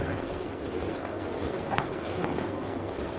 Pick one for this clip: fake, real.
fake